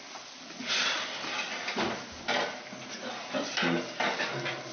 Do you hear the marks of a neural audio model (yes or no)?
no